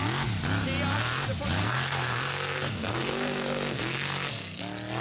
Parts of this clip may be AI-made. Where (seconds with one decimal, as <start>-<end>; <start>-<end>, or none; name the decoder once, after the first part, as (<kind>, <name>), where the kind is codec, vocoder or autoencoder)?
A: 1.6-4.6 (codec, SNAC)